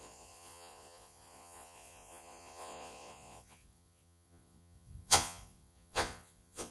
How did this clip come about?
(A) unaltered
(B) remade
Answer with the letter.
B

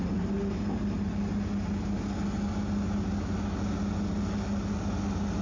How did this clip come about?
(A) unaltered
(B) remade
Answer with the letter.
A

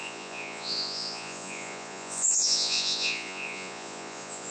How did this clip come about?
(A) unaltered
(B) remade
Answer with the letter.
B